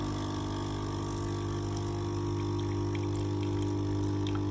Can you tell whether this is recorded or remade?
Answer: recorded